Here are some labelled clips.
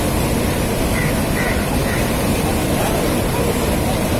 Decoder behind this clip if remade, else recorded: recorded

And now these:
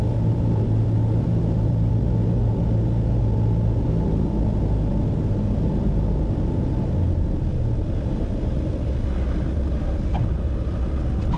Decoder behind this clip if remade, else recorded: recorded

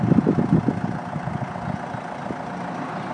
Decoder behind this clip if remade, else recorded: recorded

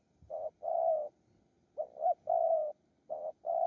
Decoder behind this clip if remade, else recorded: recorded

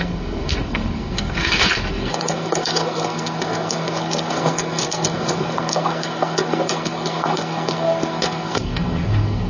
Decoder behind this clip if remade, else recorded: remade, codec, SNAC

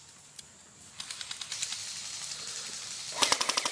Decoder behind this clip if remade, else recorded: recorded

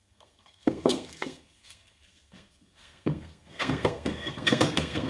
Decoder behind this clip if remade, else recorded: remade, codec, SNAC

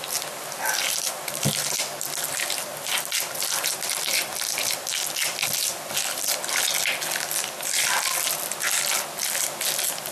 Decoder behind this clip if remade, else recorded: recorded